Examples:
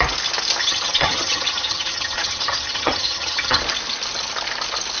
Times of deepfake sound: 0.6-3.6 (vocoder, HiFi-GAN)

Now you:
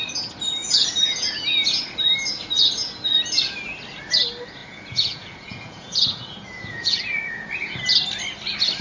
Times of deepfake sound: 0.6-1.4 (vocoder, Vocos); 4.6-7.8

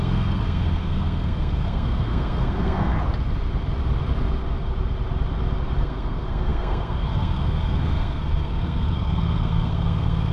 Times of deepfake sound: 0.0-2.9 (codec, SNAC); 5.8-10.3

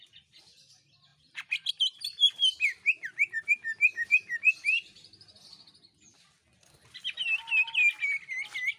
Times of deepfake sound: 1.1-1.7 (vocoder, BigVGAN v2); 2.1-5.7

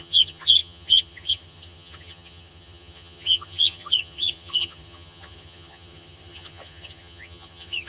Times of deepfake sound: 0.0-7.9 (vocoder, HiFi-GAN)

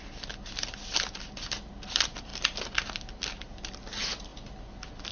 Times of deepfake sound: none

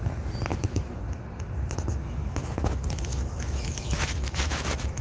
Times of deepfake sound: 0.5-1.0 (autoencoder, DAC-VAE); 1.9-5.0